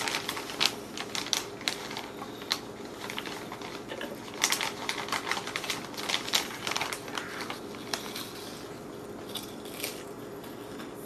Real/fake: real